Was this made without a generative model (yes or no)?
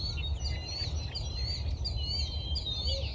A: yes